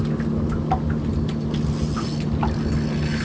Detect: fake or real real